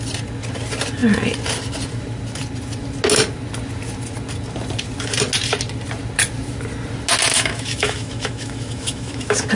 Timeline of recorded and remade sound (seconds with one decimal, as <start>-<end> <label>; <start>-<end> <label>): 0.0-7.3 recorded; 7.3-9.5 remade